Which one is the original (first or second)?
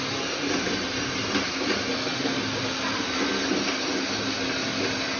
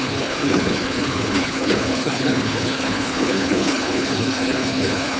first